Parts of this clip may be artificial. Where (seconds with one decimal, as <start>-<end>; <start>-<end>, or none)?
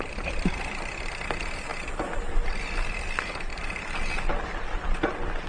none